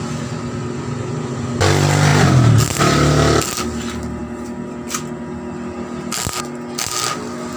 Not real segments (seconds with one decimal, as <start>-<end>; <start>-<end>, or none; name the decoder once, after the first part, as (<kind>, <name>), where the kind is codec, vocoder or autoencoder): none